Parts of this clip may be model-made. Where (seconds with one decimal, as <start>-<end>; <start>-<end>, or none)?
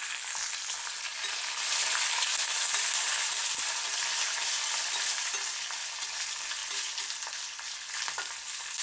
none